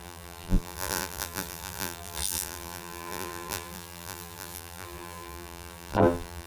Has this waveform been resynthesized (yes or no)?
yes